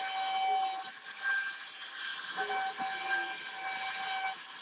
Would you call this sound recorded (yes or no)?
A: yes